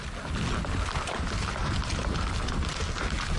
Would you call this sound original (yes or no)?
yes